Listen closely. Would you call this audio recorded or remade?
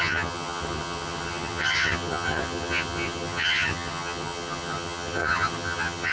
remade